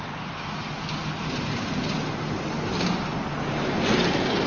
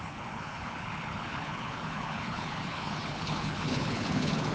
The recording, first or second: first